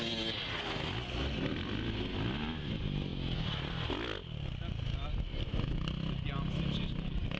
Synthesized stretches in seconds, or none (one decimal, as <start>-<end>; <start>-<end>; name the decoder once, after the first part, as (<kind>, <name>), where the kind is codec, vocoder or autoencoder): none

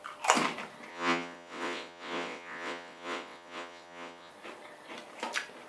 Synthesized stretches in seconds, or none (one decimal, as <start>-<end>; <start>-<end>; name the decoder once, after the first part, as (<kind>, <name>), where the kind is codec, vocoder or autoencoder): 0.9-4.3 (vocoder, WaveNeXt)

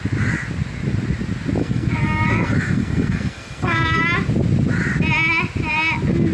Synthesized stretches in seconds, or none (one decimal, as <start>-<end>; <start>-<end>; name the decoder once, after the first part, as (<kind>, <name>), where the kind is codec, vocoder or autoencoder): 1.6-4.0 (codec, SNAC)

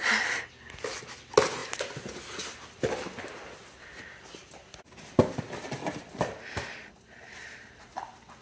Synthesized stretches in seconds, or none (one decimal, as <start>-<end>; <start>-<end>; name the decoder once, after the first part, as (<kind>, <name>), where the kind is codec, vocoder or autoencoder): none

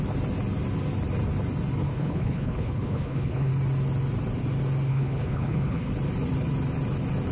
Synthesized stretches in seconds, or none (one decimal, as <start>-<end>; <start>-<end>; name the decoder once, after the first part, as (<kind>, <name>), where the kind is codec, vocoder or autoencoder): 1.8-3.5 (codec, HILCodec); 4.9-5.9